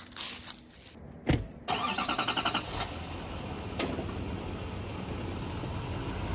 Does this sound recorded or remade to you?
recorded